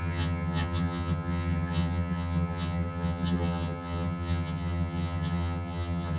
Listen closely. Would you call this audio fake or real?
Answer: fake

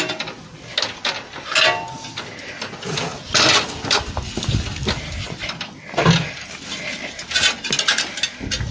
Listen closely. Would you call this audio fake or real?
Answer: real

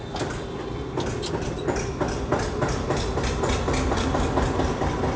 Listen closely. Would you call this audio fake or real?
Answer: real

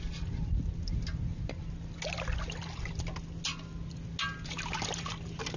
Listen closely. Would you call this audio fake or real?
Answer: real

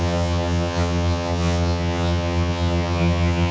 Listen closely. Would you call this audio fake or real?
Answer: fake